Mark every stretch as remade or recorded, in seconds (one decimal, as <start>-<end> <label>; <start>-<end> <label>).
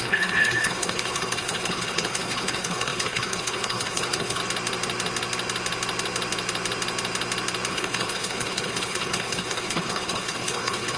0.0-4.4 remade; 4.4-7.7 recorded; 7.7-11.0 remade